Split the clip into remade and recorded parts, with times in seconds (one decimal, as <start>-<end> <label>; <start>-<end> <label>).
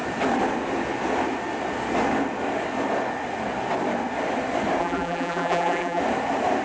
0.0-4.8 recorded; 4.8-6.0 remade; 6.0-6.6 recorded